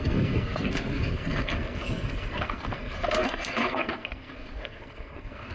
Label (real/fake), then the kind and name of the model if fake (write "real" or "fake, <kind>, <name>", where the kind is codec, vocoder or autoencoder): fake, codec, SNAC